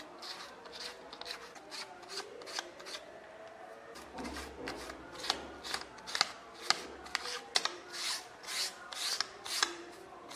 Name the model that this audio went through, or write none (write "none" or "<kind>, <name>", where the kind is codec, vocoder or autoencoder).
none